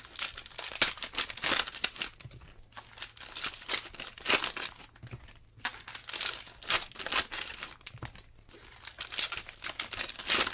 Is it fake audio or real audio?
real